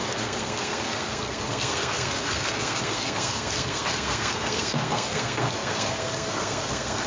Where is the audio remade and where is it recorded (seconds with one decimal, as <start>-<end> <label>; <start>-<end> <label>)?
0.0-7.1 remade